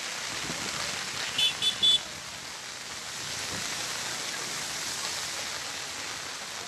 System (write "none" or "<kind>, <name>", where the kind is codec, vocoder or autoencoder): none